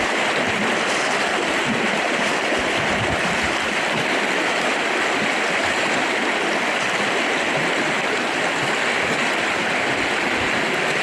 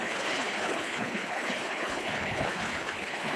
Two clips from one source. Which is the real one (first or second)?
first